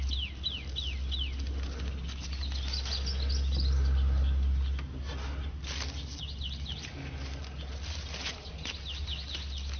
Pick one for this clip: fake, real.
real